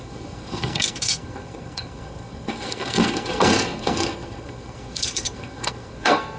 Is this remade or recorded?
remade